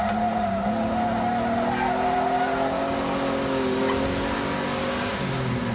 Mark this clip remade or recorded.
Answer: recorded